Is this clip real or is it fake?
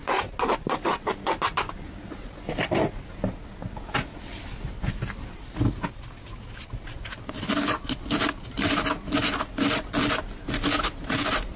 real